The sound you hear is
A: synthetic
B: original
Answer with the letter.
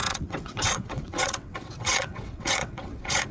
A